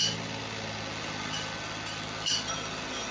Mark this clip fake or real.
real